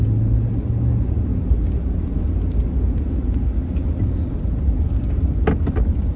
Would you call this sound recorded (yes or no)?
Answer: yes